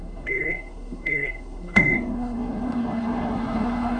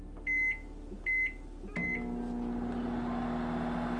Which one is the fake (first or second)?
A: first